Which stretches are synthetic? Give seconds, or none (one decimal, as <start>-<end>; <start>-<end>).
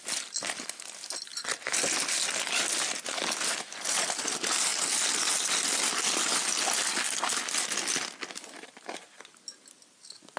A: none